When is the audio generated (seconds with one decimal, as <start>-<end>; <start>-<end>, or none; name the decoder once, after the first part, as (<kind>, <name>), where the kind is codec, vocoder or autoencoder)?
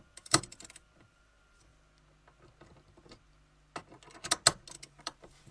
0.0-1.7 (vocoder, BigVGAN v2); 5.0-5.5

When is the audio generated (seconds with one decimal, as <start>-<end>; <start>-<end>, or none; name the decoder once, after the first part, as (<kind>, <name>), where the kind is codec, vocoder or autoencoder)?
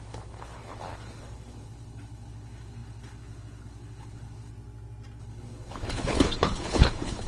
0.0-4.5 (codec, HILCodec); 5.2-7.3